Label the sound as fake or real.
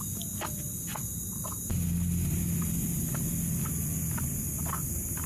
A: real